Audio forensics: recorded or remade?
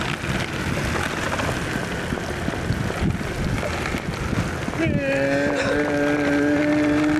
recorded